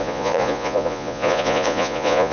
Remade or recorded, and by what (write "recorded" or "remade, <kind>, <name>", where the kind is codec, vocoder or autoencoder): remade, vocoder, Vocos